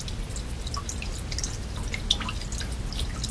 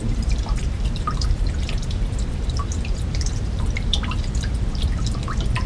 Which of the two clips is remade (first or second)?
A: second